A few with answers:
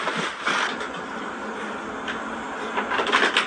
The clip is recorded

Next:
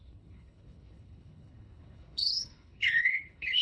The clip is remade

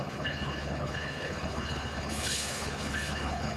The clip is remade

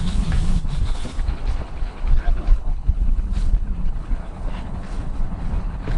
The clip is remade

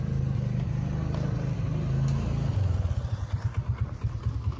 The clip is recorded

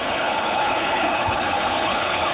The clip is remade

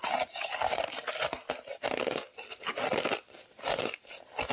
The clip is recorded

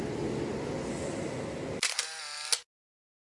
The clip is recorded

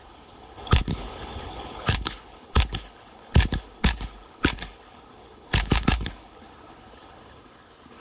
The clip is remade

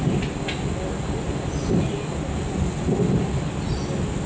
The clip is recorded